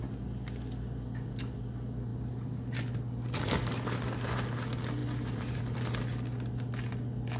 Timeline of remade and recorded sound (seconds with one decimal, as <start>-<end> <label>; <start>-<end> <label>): 0.0-5.0 recorded; 5.0-5.6 remade; 5.6-7.4 recorded